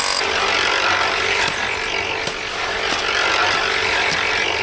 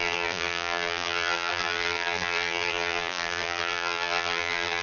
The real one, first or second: first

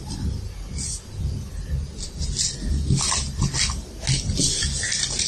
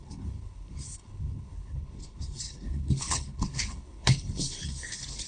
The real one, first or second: first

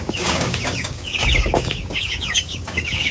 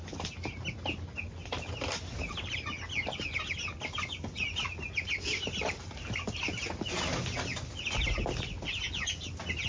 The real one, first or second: second